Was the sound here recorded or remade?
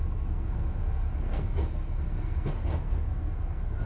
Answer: remade